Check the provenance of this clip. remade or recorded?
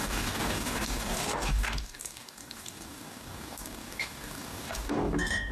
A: remade